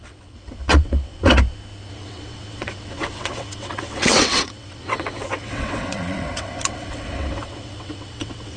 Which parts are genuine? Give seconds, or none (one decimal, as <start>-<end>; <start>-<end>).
1.2-1.9